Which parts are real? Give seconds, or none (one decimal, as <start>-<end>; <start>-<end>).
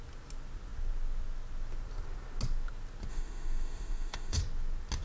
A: 0.0-3.1; 4.4-5.0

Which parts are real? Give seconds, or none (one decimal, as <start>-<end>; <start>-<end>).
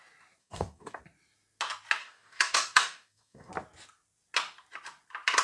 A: 0.0-0.4; 1.0-2.0; 3.5-5.4